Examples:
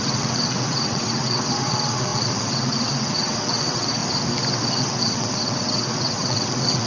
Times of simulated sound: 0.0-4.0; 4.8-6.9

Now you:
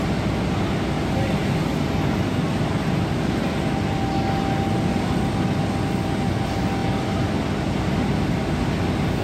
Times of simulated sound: none

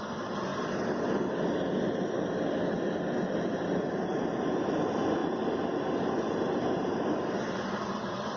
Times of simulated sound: none